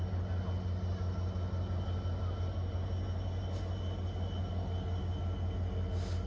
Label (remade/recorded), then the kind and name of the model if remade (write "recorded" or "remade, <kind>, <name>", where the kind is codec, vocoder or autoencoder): recorded